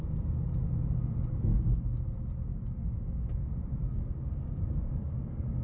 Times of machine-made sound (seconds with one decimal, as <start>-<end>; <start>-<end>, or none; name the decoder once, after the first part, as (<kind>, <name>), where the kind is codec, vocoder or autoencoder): 1.5-2.0 (codec, DAC); 2.5-3.4; 3.8-5.6